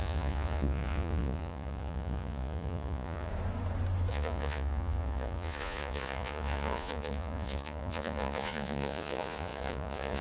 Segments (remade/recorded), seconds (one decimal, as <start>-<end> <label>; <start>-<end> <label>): 0.0-3.3 remade; 3.3-4.1 recorded; 4.1-10.2 remade